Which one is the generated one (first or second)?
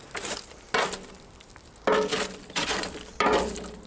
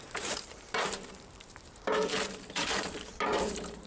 second